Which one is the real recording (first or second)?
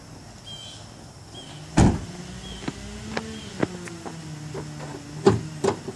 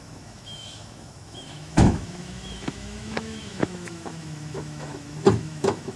first